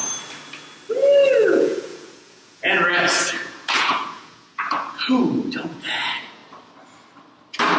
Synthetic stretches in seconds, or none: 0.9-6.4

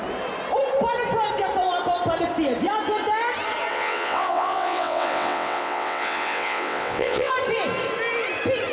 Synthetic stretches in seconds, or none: 3.7-7.3

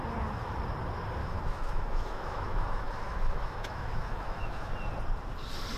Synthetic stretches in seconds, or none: 1.2-4.7